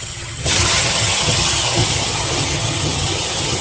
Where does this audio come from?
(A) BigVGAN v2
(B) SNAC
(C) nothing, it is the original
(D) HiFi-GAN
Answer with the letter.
D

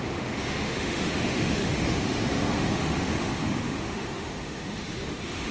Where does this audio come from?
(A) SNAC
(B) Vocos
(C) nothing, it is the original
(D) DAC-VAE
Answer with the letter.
D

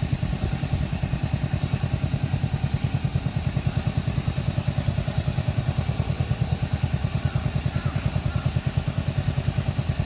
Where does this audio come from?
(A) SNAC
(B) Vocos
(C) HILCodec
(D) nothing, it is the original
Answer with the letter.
D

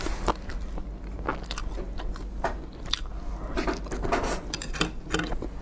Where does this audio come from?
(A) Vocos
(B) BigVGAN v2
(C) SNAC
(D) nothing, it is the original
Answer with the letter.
D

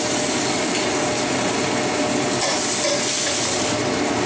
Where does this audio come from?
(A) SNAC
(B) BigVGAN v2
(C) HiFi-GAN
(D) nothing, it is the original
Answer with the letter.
D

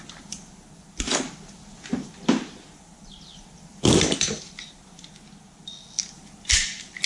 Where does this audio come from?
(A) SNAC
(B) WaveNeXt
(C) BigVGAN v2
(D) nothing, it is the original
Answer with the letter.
D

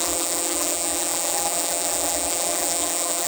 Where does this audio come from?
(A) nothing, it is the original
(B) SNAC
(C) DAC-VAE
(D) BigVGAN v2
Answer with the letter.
D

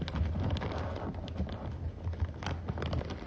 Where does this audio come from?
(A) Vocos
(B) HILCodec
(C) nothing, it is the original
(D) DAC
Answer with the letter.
C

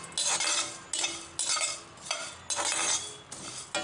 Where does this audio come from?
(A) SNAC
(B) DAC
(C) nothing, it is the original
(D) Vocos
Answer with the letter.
C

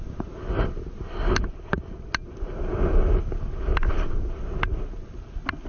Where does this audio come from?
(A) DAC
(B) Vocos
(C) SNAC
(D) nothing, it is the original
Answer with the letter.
D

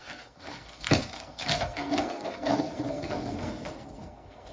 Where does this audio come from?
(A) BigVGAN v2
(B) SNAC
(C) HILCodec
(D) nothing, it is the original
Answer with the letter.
B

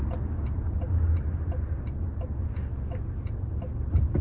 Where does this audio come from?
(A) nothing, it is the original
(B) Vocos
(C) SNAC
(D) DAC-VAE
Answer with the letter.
A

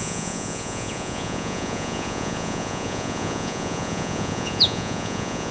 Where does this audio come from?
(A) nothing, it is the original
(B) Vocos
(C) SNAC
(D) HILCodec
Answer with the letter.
B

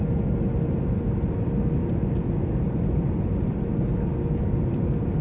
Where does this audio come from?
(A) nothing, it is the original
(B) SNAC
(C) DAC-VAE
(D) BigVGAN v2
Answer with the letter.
A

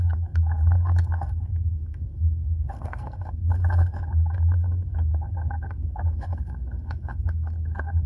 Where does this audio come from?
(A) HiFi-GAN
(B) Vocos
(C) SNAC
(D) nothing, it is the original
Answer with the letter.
C